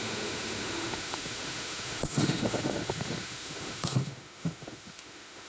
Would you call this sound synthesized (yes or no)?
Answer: yes